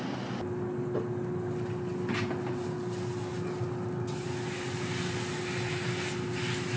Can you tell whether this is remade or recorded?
recorded